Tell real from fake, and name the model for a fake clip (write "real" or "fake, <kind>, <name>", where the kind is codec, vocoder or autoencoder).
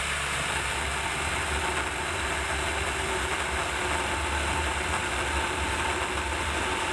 real